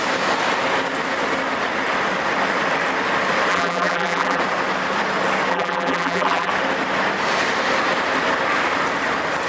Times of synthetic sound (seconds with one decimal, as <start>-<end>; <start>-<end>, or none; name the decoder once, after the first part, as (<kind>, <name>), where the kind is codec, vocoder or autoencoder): 3.5-4.4 (vocoder, BigVGAN v2); 5.5-6.5